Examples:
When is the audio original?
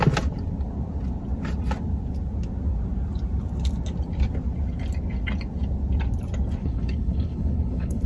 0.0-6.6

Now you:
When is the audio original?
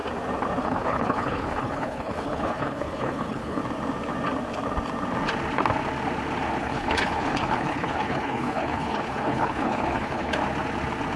0.0-0.6; 3.6-6.6; 10.4-11.2